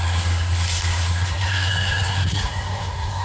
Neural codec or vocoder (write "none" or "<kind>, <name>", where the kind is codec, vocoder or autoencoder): codec, SNAC